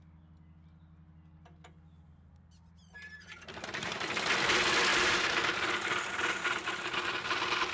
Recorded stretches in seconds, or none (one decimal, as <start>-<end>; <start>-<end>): 0.0-2.8; 4.1-4.9; 5.5-7.7